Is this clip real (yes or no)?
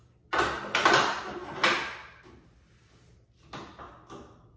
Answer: yes